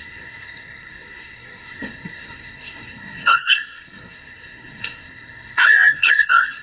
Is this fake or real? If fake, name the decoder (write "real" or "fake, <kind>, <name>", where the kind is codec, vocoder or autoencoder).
fake, codec, SNAC